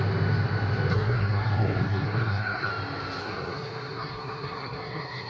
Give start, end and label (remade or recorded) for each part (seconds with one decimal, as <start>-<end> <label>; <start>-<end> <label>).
0.0-0.9 recorded; 0.9-2.7 remade; 2.7-3.2 recorded; 3.2-5.3 remade